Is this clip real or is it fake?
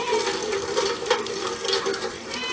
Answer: real